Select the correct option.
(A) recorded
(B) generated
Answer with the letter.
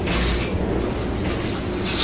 A